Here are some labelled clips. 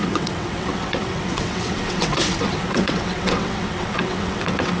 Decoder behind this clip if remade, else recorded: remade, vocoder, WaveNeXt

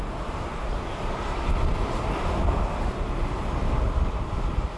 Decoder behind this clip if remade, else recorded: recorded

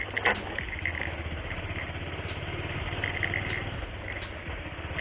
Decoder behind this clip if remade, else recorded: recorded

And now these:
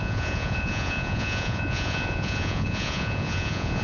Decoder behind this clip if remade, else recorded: remade, vocoder, Vocos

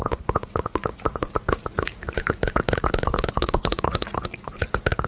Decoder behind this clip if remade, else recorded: remade, vocoder, Vocos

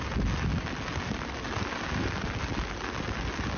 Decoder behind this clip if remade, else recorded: recorded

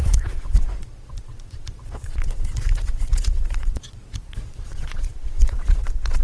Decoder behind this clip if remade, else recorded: remade, vocoder, Vocos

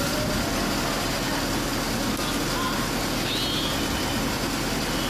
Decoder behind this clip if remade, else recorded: recorded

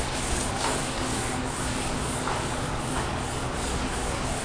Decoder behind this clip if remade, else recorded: remade, codec, DAC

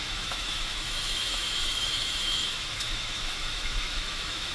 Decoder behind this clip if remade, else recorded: remade, autoencoder, DAC-VAE